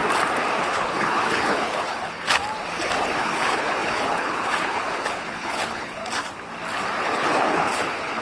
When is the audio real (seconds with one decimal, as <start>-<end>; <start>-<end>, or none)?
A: 0.0-0.6; 2.4-3.2; 6.0-7.0